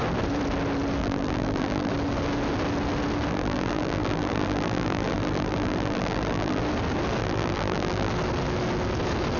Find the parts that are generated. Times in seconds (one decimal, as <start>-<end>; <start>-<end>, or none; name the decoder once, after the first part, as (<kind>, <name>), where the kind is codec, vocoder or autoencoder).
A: 1.0-1.9 (vocoder, BigVGAN v2); 3.3-6.6; 7.2-8.1